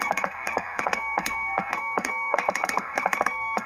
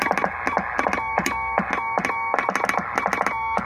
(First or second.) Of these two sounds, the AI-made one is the first